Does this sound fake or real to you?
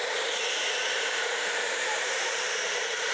fake